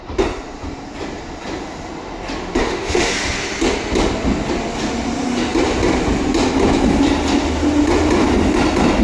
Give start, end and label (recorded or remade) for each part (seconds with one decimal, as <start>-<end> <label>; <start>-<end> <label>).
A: 0.0-2.6 recorded; 2.6-3.1 remade; 3.1-9.0 recorded